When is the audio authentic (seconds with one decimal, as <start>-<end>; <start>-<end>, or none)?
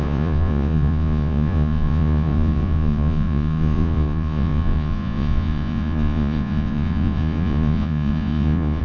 none